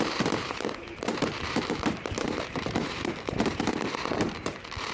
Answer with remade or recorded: remade